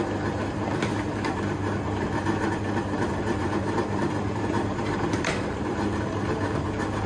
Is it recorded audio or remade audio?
remade